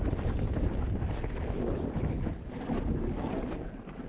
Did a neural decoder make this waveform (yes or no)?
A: no